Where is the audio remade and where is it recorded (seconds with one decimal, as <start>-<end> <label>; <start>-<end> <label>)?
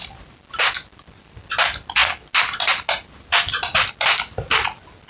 0.0-5.1 recorded